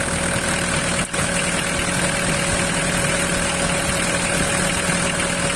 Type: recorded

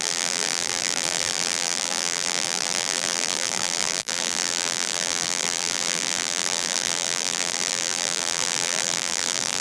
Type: remade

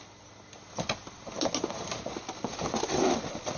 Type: recorded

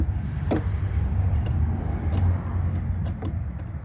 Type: recorded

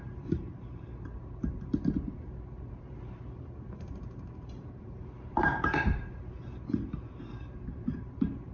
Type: remade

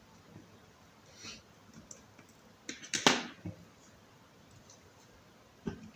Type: recorded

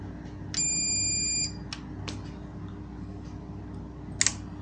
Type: recorded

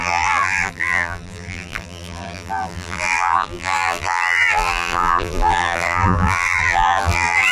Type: remade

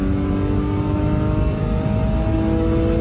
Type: recorded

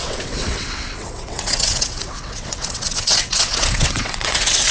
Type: remade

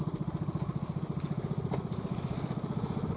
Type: recorded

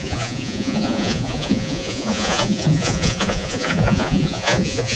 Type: remade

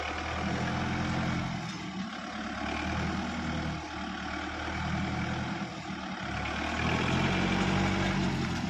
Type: recorded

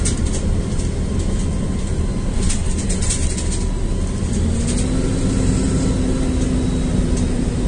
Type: recorded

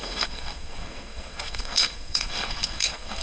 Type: remade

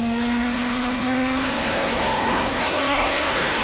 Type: remade